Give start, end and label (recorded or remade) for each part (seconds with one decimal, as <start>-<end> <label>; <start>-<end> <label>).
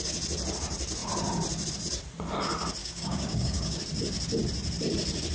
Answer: 0.0-2.8 recorded; 2.8-3.8 remade; 3.8-5.3 recorded